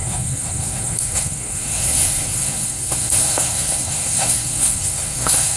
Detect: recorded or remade remade